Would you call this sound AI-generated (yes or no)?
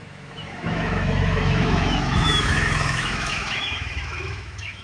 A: yes